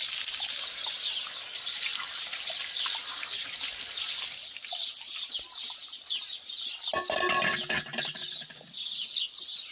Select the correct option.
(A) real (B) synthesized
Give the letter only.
A